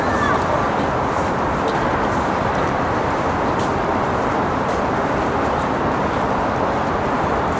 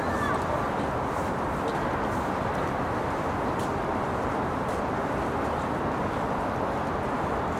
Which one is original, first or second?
second